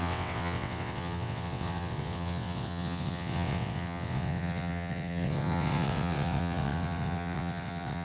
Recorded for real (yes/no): no